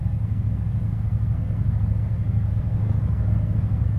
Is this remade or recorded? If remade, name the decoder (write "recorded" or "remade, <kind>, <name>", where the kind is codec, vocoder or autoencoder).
remade, codec, SNAC